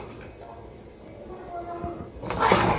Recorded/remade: recorded